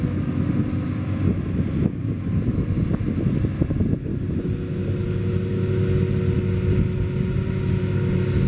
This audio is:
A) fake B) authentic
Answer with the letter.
B